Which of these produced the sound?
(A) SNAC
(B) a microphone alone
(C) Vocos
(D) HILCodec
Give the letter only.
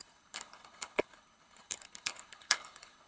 D